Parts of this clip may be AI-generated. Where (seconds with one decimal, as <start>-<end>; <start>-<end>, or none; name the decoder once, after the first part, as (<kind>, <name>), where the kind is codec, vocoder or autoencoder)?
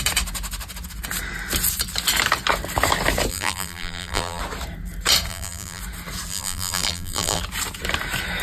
3.3-4.4 (vocoder, BigVGAN v2); 5.3-5.8; 6.3-7.4